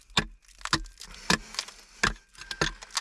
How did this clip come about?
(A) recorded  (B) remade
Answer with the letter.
A